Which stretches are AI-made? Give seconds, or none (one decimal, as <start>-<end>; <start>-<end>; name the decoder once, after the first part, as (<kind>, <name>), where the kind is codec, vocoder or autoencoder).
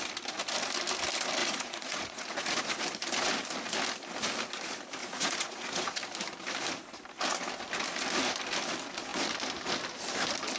1.4-2.7 (vocoder, Vocos); 5.0-6.0